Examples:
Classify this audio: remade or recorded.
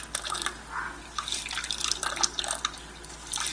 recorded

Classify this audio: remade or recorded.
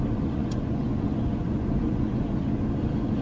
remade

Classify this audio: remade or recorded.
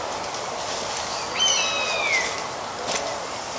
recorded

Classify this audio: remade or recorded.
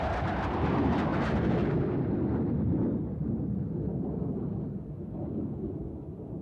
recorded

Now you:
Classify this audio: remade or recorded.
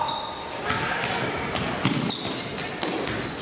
recorded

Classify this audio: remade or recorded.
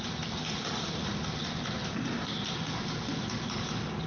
recorded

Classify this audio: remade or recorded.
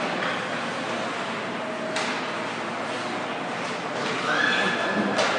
recorded